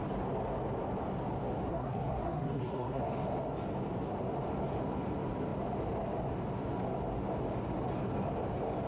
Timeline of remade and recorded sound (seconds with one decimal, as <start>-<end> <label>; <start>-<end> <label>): 0.0-1.7 recorded; 1.7-3.0 remade; 3.0-8.9 recorded